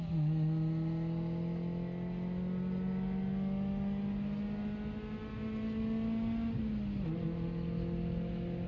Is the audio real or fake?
real